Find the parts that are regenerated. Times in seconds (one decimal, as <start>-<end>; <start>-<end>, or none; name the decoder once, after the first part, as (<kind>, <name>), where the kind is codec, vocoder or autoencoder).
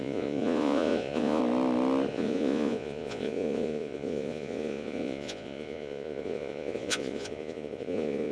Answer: 0.0-1.4 (vocoder, Vocos); 2.1-8.3